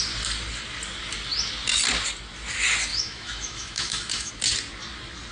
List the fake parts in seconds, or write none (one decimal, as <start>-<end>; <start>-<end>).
2.9-4.3